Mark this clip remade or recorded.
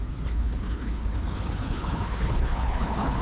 remade